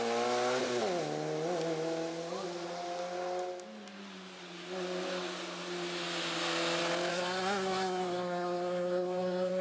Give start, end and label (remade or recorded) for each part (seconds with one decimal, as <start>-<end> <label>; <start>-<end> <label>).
0.0-7.1 recorded; 7.1-9.6 remade